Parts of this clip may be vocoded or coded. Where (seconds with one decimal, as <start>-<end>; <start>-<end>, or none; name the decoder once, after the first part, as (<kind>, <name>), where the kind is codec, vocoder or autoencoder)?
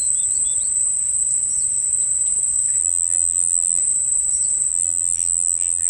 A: 2.8-3.8 (vocoder, BigVGAN v2); 4.7-5.9